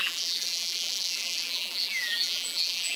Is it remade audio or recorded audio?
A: remade